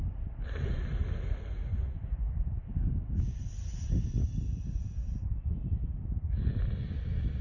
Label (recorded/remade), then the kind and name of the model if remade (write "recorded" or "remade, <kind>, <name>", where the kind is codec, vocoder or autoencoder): recorded